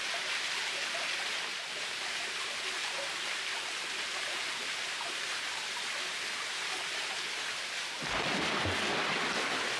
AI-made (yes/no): no